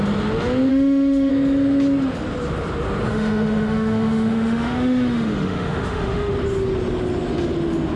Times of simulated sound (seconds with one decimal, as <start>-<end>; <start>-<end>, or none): 0.7-1.3; 3.1-6.3